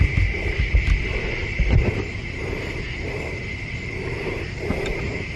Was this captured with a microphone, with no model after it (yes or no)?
yes